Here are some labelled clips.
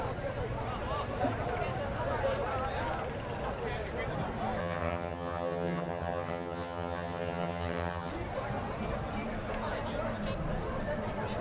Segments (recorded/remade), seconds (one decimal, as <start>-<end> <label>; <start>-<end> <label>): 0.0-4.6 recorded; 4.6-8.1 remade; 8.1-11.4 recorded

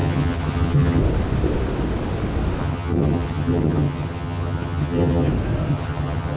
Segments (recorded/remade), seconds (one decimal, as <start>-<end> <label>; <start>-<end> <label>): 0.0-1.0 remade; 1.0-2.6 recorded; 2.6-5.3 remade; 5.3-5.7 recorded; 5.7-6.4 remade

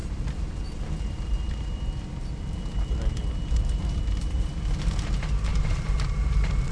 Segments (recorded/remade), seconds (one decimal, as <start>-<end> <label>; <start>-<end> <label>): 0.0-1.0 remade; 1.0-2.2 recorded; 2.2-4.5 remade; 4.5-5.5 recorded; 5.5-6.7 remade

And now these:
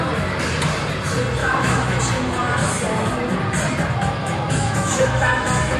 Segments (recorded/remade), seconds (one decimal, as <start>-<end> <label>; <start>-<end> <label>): 0.0-1.4 recorded; 1.4-2.0 remade; 2.0-4.2 recorded; 4.2-5.8 remade

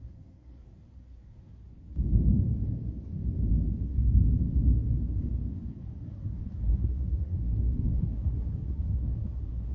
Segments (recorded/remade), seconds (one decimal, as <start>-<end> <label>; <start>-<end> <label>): 0.0-1.5 remade; 1.5-5.7 recorded; 5.7-9.7 remade

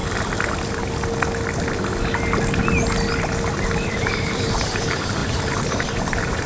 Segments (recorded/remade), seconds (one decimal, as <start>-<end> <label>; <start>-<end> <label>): 0.0-3.9 recorded; 3.9-6.5 remade

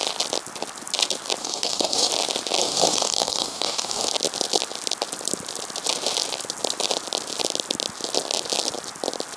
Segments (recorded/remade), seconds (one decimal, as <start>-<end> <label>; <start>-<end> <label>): 0.0-1.4 recorded; 1.4-2.1 remade; 2.1-2.6 recorded; 2.6-4.1 remade; 4.1-9.4 recorded

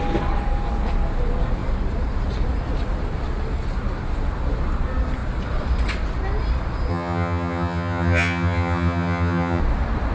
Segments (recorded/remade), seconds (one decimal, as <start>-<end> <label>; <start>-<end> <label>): 0.0-6.9 recorded; 6.9-9.6 remade; 9.6-10.1 recorded